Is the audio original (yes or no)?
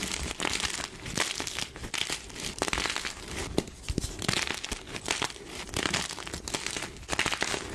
yes